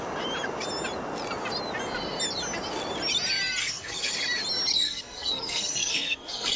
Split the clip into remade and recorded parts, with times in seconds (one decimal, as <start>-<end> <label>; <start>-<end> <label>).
0.0-3.6 recorded; 3.6-4.1 remade; 4.1-4.7 recorded; 4.7-6.6 remade